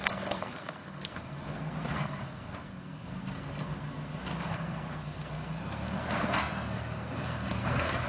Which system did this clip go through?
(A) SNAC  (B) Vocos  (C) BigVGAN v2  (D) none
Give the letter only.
A